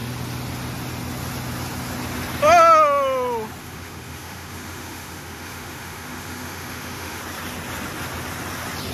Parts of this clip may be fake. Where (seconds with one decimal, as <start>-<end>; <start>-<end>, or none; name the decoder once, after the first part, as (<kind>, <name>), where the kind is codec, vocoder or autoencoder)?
3.6-7.2 (autoencoder, DAC-VAE)